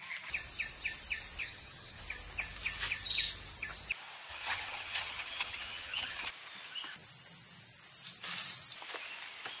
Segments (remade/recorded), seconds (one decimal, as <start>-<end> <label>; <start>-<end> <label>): 0.0-1.4 recorded; 1.4-2.0 remade; 2.0-4.3 recorded; 4.3-6.3 remade; 6.3-9.6 recorded